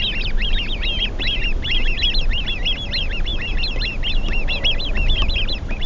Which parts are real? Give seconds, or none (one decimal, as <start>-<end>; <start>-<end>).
0.0-0.4; 2.0-5.9

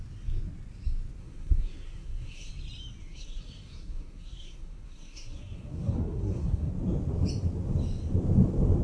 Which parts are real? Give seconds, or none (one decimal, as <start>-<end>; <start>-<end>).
0.0-1.2; 2.5-3.0; 6.7-8.8

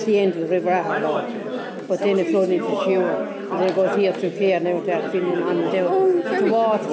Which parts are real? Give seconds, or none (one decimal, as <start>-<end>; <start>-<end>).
0.0-6.9

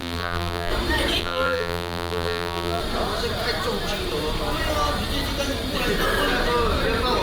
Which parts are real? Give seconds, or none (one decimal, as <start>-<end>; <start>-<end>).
0.7-1.2; 2.8-7.2

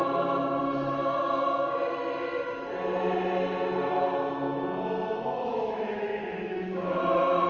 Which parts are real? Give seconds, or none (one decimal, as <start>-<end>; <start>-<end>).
0.0-5.5; 7.0-7.5

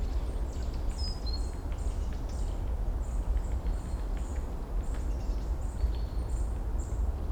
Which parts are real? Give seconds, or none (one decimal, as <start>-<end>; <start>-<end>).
0.0-7.3

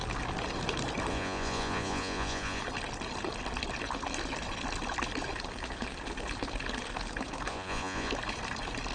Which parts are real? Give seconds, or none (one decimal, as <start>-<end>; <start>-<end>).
0.0-1.1; 2.6-7.5; 8.1-8.9

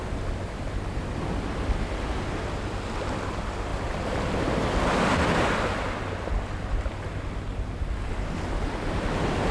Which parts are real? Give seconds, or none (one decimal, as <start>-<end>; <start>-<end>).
0.0-3.7; 4.4-9.5